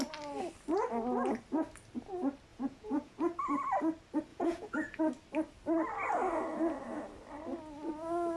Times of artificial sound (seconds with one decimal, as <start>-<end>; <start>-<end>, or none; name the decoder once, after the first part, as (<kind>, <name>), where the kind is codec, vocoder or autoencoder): 2.5-3.4 (vocoder, Vocos); 4.3-5.0